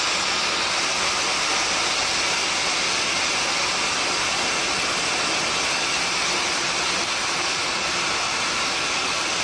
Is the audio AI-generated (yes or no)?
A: no